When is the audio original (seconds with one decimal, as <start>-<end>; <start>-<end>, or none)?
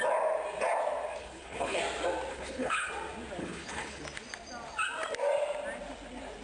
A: 0.0-1.2; 1.8-2.3; 2.9-3.4; 4.0-6.4